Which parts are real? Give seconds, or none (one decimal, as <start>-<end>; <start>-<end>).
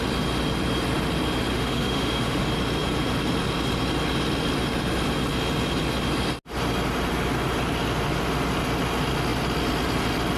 0.0-1.5; 2.4-10.4